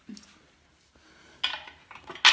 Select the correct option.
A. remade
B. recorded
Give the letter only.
B